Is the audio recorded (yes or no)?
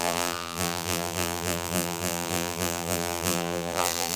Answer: no